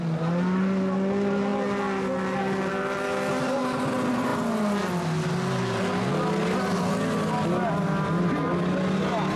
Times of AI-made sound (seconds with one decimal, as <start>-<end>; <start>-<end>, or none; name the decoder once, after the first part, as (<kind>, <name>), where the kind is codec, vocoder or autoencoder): none